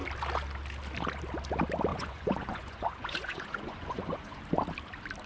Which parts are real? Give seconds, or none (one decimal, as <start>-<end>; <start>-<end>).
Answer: 0.0-1.9; 4.4-5.3

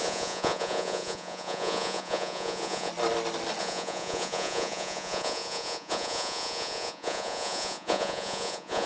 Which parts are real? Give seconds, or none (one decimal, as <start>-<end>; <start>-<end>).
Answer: 2.9-3.6

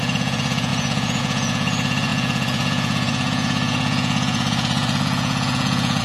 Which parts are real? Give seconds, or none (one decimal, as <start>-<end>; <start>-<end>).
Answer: none

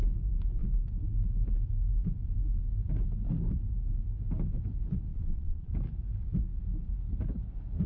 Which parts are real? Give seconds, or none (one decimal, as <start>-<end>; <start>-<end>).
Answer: 0.0-5.1; 5.7-7.9

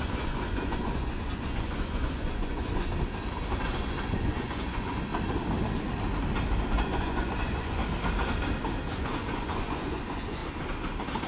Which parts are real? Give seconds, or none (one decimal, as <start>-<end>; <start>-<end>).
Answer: 2.9-3.6; 5.1-6.7; 7.8-8.9; 10.4-11.3

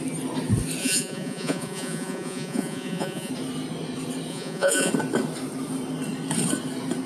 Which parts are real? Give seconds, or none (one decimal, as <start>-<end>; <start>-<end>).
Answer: 0.0-0.8; 3.3-4.3; 4.9-7.1

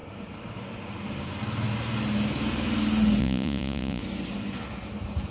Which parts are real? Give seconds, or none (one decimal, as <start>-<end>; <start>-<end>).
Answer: 0.0-3.2; 4.0-5.3